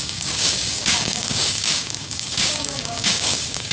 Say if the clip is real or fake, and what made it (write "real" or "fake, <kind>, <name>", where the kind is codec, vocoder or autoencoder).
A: fake, codec, DAC